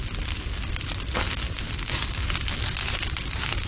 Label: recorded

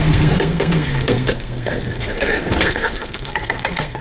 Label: remade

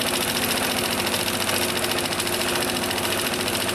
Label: recorded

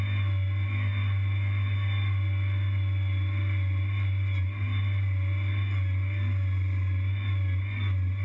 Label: recorded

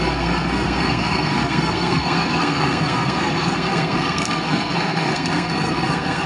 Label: remade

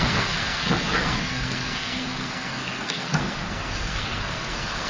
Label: remade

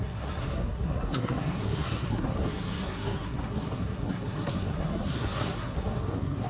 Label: remade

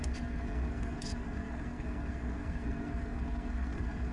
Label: remade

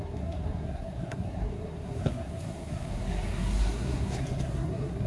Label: remade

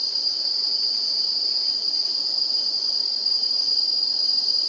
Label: recorded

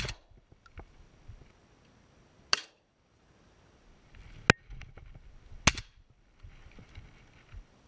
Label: recorded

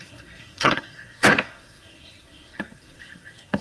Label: remade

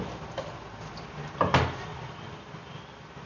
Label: recorded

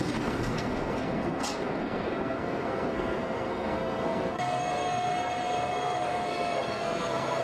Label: remade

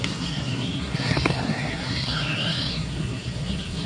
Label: remade